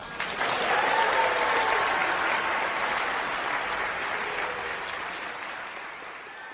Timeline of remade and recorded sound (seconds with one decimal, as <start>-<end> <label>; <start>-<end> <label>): 0.0-6.5 recorded